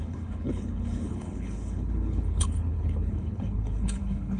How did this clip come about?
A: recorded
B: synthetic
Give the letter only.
B